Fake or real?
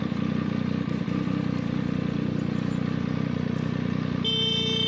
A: real